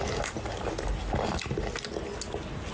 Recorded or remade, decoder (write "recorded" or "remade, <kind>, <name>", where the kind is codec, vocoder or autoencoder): recorded